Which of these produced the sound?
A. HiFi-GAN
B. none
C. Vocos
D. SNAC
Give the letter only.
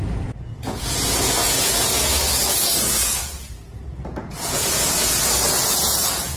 C